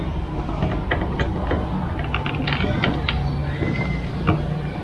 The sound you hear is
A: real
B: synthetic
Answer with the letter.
A